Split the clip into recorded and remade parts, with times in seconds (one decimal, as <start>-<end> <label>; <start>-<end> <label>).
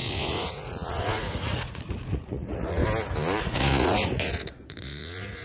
0.0-2.8 remade; 2.8-3.4 recorded; 3.4-5.4 remade